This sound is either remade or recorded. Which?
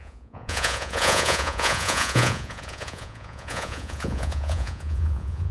remade